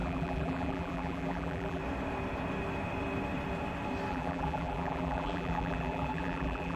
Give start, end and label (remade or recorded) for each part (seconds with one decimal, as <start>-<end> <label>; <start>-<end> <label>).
0.0-1.8 remade; 1.8-4.1 recorded; 4.1-6.8 remade